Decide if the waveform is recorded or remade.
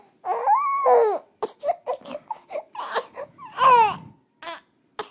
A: recorded